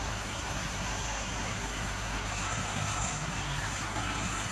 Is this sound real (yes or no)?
no